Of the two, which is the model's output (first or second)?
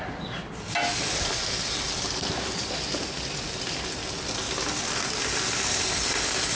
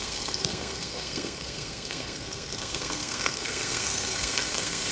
second